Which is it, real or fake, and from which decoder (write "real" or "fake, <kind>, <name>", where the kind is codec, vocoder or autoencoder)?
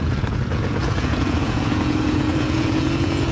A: fake, vocoder, Vocos